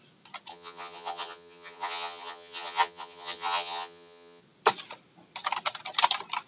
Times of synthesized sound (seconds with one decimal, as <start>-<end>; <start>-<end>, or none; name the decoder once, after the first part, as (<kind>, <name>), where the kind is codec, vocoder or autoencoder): 0.5-4.4 (vocoder, HiFi-GAN)